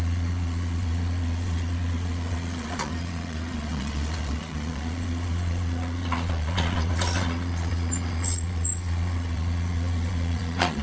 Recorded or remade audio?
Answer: remade